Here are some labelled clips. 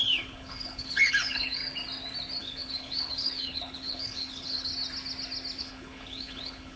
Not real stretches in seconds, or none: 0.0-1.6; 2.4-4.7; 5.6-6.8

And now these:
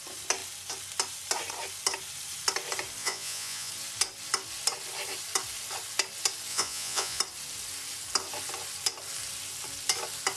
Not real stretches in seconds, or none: 3.0-3.7; 6.5-7.2

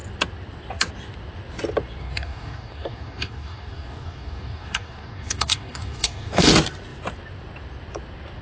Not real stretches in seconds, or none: 2.0-6.5

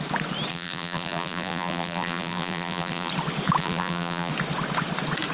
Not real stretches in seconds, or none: 0.5-3.1; 3.6-4.3

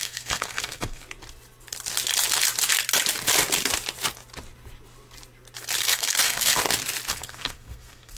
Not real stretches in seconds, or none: 0.0-1.0; 5.8-6.6; 7.1-8.2

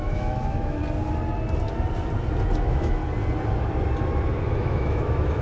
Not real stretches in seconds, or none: 0.0-0.8; 2.6-3.0; 4.3-5.4

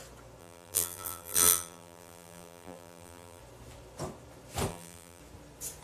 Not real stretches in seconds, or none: 0.4-3.4; 4.7-5.2